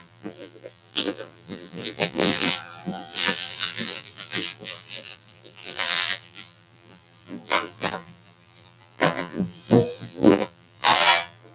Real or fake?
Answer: fake